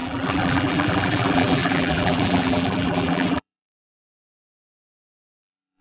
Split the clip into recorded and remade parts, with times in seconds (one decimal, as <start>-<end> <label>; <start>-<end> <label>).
0.0-5.8 remade